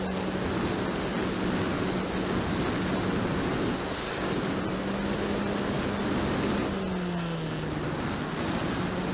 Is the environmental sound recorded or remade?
recorded